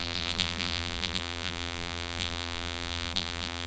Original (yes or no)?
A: no